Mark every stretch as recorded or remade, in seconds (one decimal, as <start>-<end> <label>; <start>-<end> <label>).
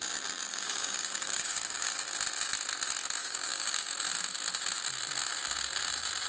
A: 0.0-0.5 recorded; 0.5-1.9 remade; 1.9-3.2 recorded; 3.2-3.9 remade; 3.9-6.3 recorded